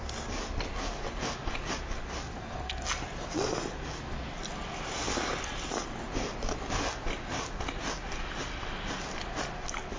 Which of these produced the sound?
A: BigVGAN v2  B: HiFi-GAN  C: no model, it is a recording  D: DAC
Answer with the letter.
C